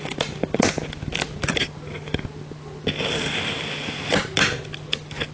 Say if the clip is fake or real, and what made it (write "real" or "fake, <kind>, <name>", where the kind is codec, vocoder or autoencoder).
real